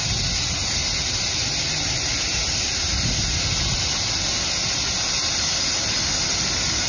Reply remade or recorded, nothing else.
recorded